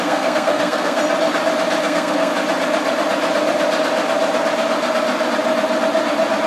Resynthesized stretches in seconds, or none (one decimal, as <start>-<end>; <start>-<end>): 0.0-1.0; 1.8-2.3